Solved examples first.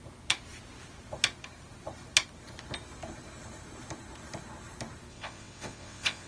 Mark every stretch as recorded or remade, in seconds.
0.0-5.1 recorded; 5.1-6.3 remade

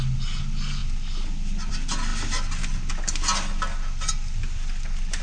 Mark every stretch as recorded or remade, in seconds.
0.0-5.2 recorded

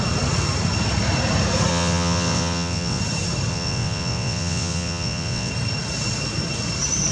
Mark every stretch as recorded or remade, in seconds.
0.0-1.7 recorded; 1.7-3.0 remade; 3.0-3.5 recorded; 3.5-5.5 remade; 5.5-7.1 recorded

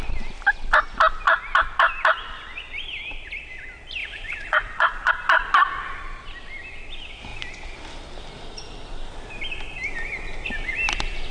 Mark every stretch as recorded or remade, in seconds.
0.0-4.0 recorded; 4.0-5.1 remade; 5.1-11.3 recorded

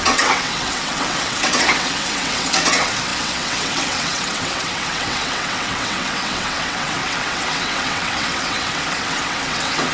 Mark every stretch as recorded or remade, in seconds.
0.0-9.9 remade